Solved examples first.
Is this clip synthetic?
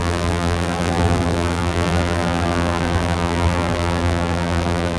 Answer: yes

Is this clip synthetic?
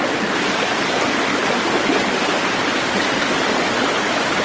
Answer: no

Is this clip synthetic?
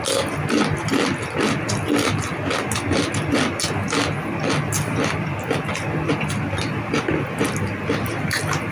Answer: no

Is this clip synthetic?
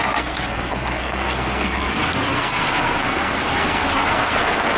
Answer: yes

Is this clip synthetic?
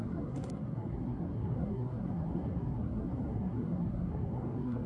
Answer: yes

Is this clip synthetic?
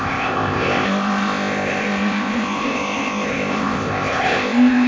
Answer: yes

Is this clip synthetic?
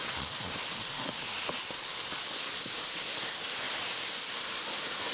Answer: no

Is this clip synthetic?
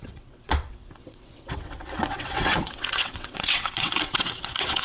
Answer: yes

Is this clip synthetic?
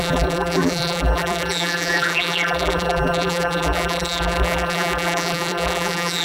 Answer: yes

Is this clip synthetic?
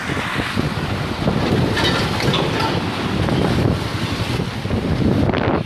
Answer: no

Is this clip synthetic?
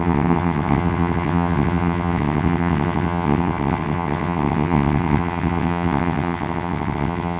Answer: yes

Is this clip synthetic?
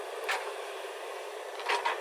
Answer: no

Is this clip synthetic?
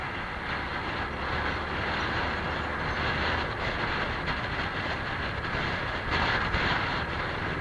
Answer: no